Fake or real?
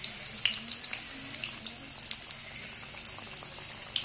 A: real